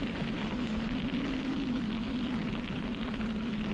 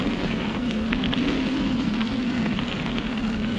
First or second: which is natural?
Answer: first